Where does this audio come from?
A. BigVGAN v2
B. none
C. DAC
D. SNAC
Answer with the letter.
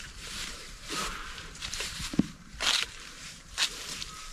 A